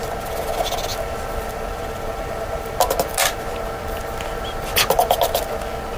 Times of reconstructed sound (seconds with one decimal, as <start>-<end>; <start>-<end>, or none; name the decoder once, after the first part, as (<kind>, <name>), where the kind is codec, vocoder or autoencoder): none